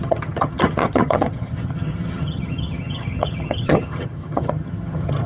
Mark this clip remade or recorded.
remade